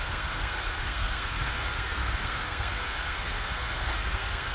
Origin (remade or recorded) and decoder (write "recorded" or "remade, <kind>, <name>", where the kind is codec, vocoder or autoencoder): remade, codec, SNAC